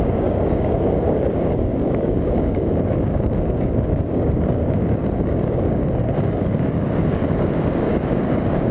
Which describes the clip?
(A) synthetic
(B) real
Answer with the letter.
A